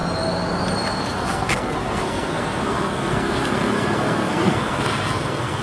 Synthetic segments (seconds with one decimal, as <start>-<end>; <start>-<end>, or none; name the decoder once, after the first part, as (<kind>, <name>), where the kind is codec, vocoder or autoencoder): 1.0-5.6 (codec, SNAC)